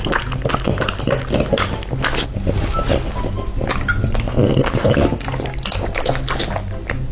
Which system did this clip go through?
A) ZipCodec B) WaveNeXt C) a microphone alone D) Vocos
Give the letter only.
C